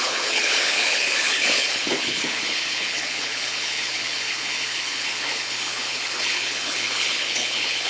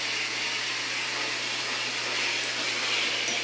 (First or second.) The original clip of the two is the second